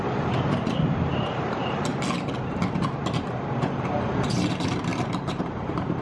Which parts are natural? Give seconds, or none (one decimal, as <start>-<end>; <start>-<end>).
1.9-3.8

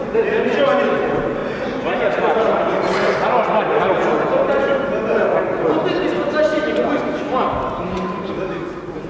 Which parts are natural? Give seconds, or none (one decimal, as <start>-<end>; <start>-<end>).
0.0-4.1; 4.8-9.1